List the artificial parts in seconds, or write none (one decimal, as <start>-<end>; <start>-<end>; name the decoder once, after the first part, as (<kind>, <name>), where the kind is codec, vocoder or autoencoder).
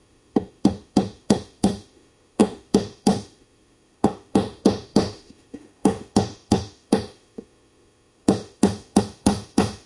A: 0.0-9.9 (autoencoder, DAC-VAE)